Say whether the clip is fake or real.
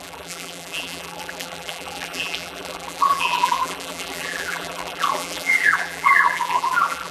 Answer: fake